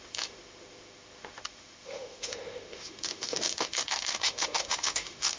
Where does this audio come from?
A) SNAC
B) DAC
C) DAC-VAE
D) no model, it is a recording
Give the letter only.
C